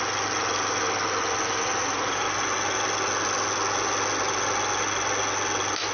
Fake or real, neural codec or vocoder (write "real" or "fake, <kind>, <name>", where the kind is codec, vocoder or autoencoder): real